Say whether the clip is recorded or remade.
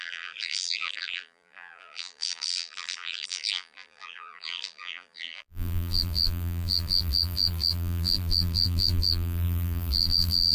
remade